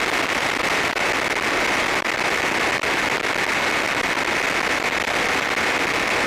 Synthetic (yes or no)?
no